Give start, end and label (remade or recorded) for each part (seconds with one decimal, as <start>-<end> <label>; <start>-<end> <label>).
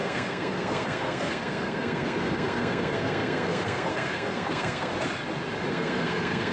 0.0-4.9 remade; 4.9-5.7 recorded; 5.7-6.5 remade